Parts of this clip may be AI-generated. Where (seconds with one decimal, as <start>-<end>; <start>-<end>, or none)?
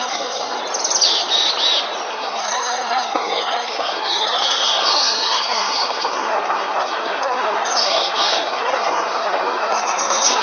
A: 0.0-0.6; 2.1-10.4